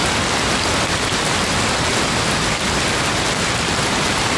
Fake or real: real